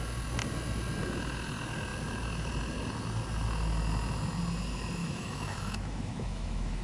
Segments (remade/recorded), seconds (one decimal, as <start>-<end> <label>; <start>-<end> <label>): 0.0-5.0 recorded; 5.0-6.8 remade